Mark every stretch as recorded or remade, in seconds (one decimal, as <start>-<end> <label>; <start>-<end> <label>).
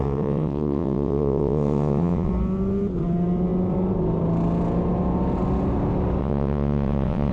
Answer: 0.0-2.3 remade; 2.3-6.2 recorded; 6.2-7.3 remade